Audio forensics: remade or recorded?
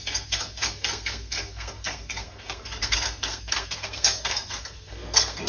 remade